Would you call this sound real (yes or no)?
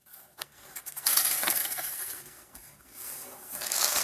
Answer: no